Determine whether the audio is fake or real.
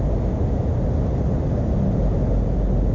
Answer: real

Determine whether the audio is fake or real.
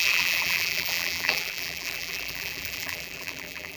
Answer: fake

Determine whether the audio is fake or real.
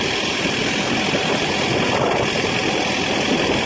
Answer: real